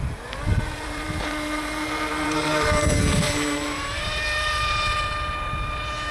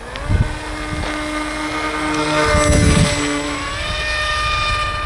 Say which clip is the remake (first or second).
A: first